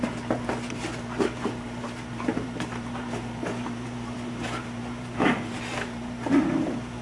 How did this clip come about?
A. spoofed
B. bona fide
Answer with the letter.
A